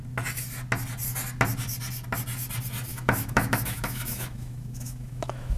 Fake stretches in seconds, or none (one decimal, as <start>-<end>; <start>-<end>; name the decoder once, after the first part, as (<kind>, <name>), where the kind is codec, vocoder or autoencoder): 2.9-5.6 (autoencoder, DAC-VAE)